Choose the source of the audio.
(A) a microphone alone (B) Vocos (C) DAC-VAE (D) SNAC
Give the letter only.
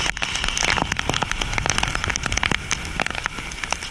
A